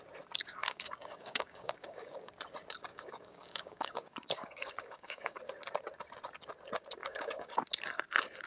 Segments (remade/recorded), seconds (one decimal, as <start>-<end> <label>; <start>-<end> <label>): 0.0-0.6 recorded; 0.6-2.3 remade; 2.3-2.9 recorded; 2.9-5.4 remade; 5.4-7.0 recorded; 7.0-7.6 remade; 7.6-8.5 recorded